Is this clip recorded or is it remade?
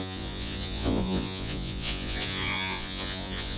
remade